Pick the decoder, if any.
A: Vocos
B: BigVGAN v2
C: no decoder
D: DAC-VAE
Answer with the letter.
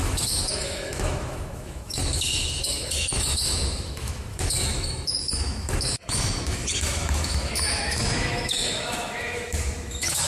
D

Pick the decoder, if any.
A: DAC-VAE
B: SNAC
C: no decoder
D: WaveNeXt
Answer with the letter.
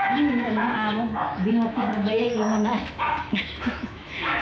A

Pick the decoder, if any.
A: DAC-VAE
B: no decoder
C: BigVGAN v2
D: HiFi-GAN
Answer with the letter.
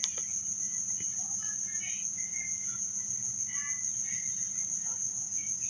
B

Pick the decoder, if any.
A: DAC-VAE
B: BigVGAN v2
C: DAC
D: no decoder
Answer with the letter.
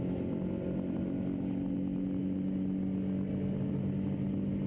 D